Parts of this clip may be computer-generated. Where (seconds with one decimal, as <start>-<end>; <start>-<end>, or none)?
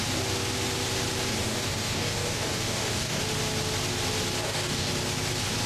1.4-3.2; 4.4-4.9